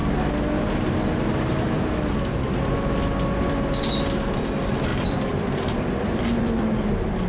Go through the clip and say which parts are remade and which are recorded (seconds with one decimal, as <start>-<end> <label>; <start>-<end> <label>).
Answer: 0.0-4.9 recorded; 4.9-7.3 remade